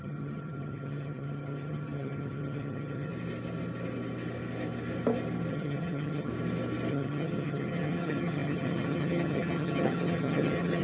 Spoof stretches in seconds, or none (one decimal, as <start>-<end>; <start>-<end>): 0.0-3.1; 5.5-6.3; 6.9-10.8